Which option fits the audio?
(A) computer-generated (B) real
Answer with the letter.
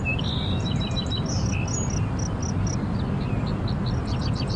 B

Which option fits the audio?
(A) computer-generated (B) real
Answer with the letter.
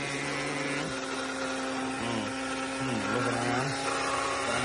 B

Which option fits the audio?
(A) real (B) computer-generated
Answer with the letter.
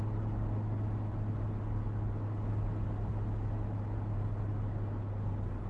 A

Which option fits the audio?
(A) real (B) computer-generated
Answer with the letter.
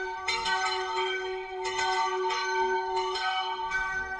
B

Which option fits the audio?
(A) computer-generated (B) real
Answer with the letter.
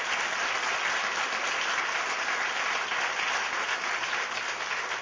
B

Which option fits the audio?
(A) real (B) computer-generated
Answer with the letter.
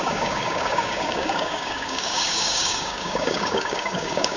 B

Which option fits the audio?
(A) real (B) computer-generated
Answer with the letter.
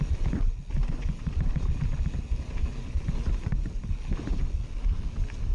A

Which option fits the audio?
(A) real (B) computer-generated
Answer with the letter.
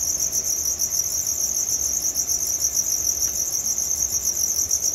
A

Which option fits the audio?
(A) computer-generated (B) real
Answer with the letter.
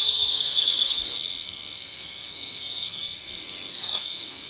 A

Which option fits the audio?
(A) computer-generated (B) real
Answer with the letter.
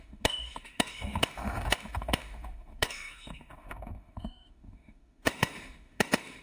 A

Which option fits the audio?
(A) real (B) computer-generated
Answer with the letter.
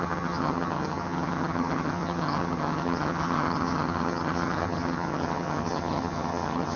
B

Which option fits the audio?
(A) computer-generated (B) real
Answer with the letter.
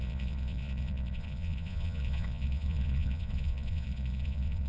A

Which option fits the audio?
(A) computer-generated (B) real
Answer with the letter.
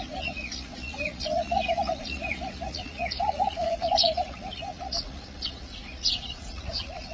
A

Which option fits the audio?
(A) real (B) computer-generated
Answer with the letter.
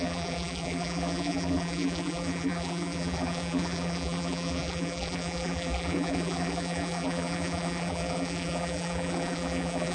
B